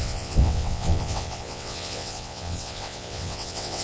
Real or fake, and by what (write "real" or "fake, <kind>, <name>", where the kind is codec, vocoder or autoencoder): fake, vocoder, WaveNeXt